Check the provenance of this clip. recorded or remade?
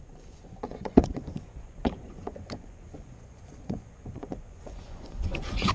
remade